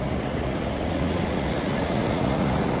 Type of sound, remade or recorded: remade